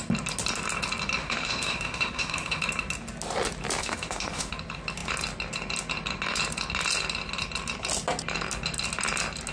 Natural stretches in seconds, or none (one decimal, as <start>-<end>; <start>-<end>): 0.0-1.2; 2.6-3.8; 4.5-9.5